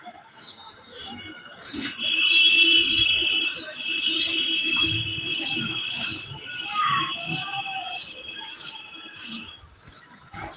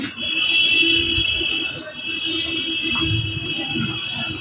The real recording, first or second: second